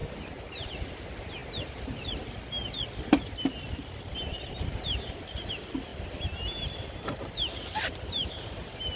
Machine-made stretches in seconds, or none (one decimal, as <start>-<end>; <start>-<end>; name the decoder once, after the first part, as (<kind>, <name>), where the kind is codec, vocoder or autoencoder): 0.0-0.5 (vocoder, BigVGAN v2); 1.4-5.2